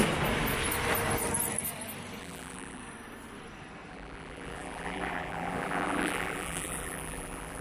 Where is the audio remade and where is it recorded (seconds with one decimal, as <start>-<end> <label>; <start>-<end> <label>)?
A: 0.0-2.2 recorded; 2.2-2.8 remade; 2.8-3.9 recorded; 3.9-7.6 remade